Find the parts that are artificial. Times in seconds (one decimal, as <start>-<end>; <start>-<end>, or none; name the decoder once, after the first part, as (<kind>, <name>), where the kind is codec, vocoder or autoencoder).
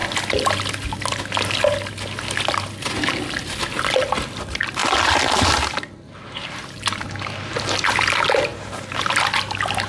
8.5-9.1 (vocoder, BigVGAN v2)